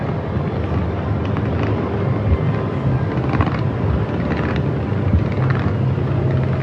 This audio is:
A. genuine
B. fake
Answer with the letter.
A